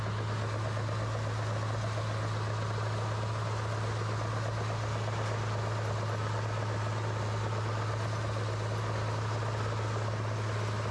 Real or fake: real